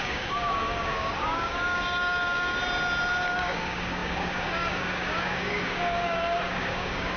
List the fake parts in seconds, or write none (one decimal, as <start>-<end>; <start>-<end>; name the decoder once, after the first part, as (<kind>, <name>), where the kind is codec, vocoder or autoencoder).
0.0-2.5 (codec, DAC); 3.3-7.2